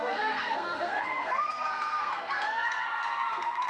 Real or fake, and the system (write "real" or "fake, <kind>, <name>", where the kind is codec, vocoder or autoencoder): fake, codec, SNAC